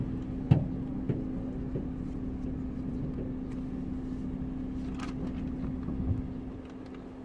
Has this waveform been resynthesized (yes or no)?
no